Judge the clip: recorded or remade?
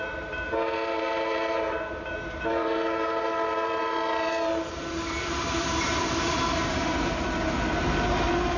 remade